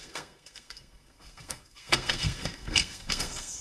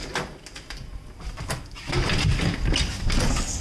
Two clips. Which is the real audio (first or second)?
second